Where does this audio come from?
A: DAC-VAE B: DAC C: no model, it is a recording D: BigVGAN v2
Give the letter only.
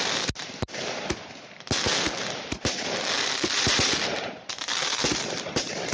C